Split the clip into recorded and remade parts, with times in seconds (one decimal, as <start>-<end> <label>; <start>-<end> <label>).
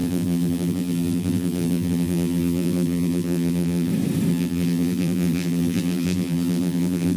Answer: 0.0-3.9 remade; 3.9-4.3 recorded; 4.3-7.2 remade